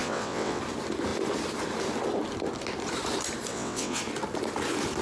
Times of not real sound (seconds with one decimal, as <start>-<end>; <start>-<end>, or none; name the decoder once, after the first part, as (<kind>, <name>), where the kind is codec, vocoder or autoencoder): 0.0-0.6 (vocoder, WaveNeXt); 3.5-4.0